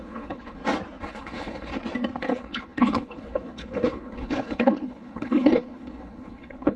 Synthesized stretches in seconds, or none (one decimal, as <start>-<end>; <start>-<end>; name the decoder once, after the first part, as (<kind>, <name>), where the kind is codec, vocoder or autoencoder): 0.0-0.6 (codec, HILCodec); 1.1-1.7; 2.2-6.8